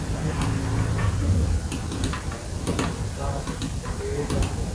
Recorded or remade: recorded